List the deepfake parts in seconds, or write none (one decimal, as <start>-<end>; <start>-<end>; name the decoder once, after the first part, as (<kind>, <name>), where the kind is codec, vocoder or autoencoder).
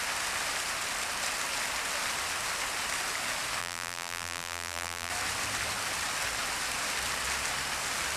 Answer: 3.6-5.1 (vocoder, BigVGAN v2)